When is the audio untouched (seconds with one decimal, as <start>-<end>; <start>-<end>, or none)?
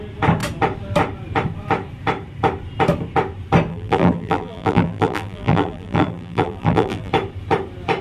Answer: 0.0-3.7; 7.1-8.0